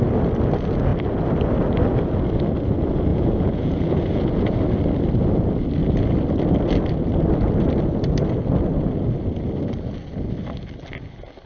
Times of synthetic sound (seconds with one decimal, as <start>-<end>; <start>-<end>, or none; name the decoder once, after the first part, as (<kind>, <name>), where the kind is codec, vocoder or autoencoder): 3.1-4.6 (vocoder, Vocos)